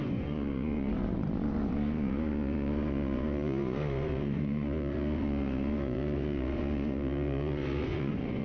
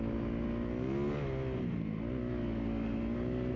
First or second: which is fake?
first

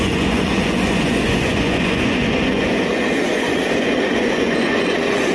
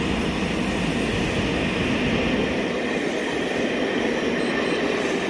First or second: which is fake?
first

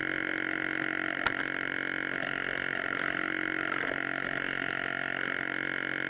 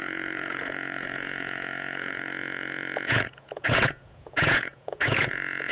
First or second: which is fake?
second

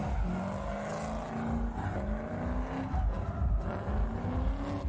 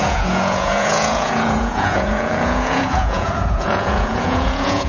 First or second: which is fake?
second